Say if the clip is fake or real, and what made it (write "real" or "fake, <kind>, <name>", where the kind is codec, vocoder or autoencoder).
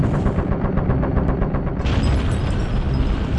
fake, vocoder, BigVGAN v2